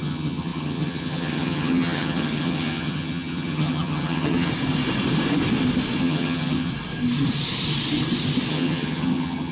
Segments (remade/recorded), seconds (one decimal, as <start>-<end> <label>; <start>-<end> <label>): 0.0-4.5 remade; 4.5-6.0 recorded; 6.0-6.7 remade; 6.7-8.5 recorded; 8.5-9.5 remade